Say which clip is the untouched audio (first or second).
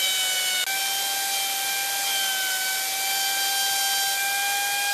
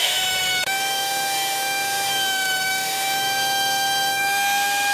first